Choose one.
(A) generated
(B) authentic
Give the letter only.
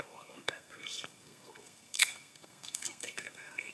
A